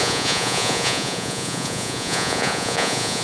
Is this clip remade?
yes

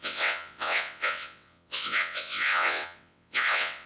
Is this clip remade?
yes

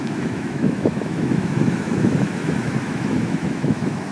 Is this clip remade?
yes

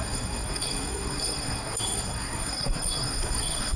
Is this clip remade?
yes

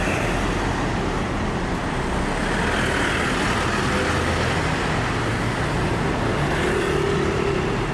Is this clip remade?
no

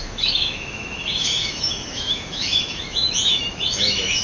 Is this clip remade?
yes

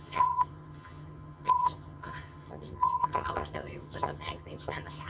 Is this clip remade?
yes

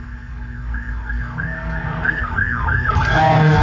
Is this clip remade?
yes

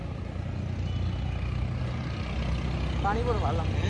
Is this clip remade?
no